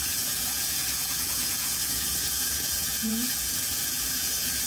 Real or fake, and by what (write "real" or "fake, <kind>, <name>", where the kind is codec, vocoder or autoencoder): fake, vocoder, Vocos